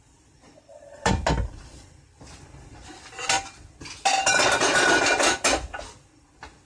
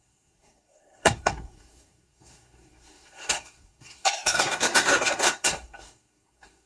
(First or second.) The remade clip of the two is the second